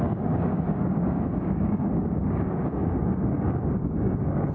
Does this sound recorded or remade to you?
remade